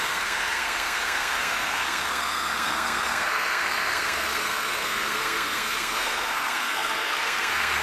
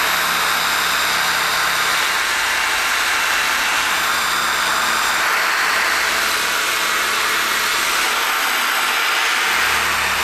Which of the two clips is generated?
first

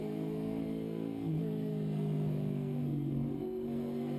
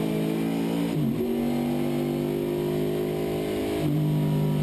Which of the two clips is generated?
first